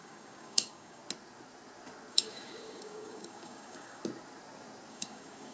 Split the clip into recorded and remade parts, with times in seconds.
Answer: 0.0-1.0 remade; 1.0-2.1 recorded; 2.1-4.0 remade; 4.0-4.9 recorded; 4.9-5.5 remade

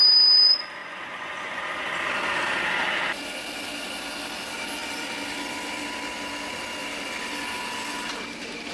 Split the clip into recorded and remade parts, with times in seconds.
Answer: 0.0-0.8 recorded; 0.8-1.6 remade; 1.6-8.7 recorded

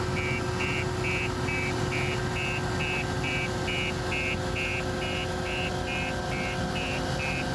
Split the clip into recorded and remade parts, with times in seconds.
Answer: 0.0-7.5 recorded

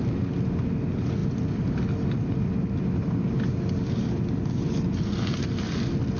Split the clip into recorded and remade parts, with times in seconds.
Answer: 0.0-6.2 recorded

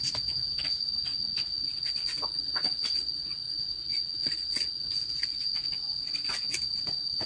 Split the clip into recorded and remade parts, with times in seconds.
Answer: 0.0-1.1 recorded; 1.1-5.4 remade; 5.4-7.3 recorded